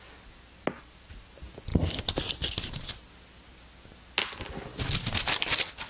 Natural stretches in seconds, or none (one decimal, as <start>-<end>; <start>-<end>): 0.0-5.9

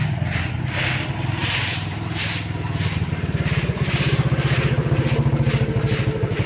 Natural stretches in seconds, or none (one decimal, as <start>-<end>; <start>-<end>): 0.7-1.4; 5.0-6.5

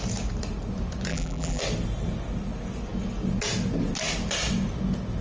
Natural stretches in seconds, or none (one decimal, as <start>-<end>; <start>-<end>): 0.0-1.1; 1.6-5.2

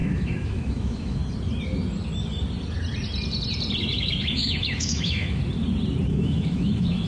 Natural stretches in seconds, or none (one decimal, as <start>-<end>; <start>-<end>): 1.2-3.8; 5.4-6.1

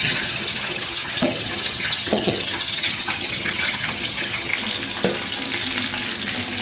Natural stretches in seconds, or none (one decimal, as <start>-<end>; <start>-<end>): 4.5-6.6